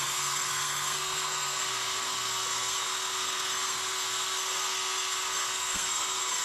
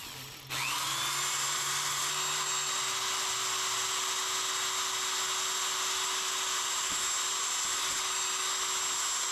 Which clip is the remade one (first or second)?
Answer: first